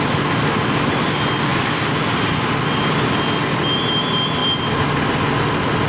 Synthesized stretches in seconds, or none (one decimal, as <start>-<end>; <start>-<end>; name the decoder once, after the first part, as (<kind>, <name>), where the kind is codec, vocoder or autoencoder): 1.5-2.5 (vocoder, BigVGAN v2)